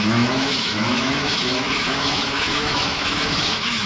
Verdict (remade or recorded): remade